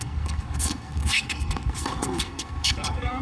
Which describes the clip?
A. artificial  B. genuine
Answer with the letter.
A